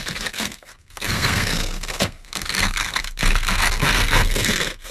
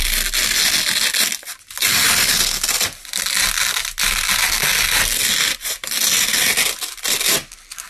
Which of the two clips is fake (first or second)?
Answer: first